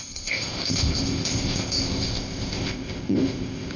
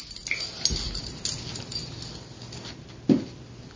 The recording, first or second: second